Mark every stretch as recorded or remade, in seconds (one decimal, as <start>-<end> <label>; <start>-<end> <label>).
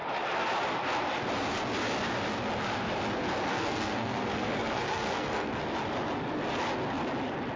0.0-3.5 recorded; 3.5-5.6 remade; 5.6-7.6 recorded